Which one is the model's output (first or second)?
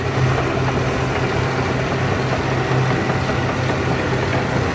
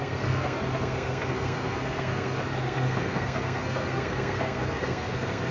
second